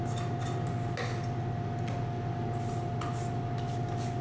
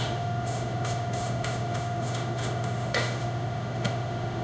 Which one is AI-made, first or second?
second